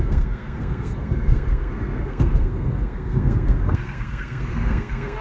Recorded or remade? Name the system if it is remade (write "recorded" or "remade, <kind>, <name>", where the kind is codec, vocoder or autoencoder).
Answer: remade, codec, SNAC